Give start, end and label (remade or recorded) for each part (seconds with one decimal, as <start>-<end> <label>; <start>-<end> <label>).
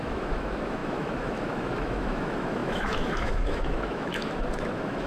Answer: 0.0-5.1 remade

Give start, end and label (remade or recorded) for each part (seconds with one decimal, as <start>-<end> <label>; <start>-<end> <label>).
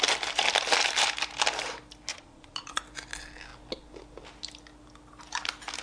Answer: 0.0-2.1 recorded; 2.1-2.8 remade; 2.8-5.8 recorded